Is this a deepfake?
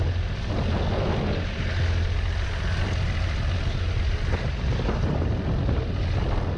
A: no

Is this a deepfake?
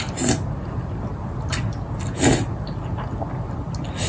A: no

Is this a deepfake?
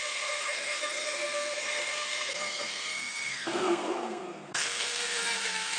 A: yes